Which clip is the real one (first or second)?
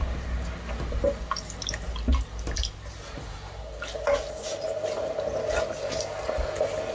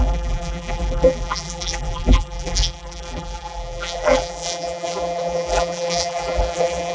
first